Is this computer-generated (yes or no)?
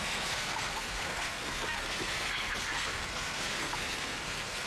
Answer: yes